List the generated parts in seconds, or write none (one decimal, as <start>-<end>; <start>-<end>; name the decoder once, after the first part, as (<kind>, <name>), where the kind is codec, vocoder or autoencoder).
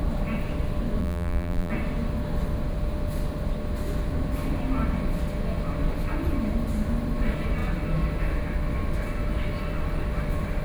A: 1.0-1.7 (vocoder, BigVGAN v2)